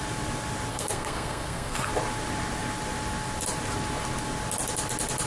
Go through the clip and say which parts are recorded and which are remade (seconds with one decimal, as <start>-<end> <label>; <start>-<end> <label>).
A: 0.0-0.7 recorded; 0.7-1.9 remade; 1.9-5.3 recorded